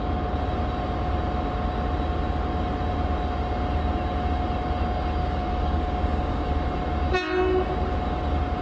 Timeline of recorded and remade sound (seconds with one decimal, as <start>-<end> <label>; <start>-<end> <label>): 0.0-5.2 recorded; 5.2-6.5 remade; 6.5-8.6 recorded